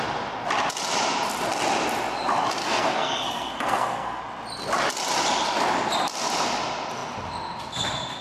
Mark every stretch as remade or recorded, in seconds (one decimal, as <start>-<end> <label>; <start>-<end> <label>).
0.0-2.6 recorded; 2.6-4.2 remade; 4.2-8.2 recorded